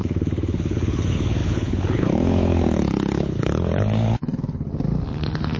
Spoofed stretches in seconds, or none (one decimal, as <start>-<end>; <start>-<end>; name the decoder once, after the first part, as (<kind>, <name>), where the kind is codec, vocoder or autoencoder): 0.0-4.7 (codec, HILCodec)